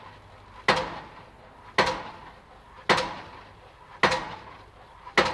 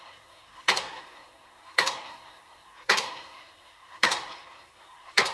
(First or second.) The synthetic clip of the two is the second